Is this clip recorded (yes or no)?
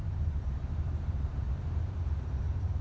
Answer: no